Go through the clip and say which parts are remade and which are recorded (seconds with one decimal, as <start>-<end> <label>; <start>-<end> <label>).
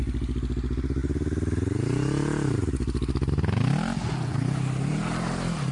0.0-5.7 recorded